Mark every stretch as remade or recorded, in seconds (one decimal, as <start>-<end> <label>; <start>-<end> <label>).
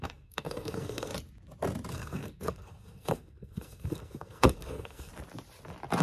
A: 0.0-1.1 remade; 1.1-1.9 recorded; 1.9-5.1 remade; 5.1-6.0 recorded